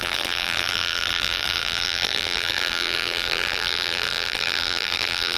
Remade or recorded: remade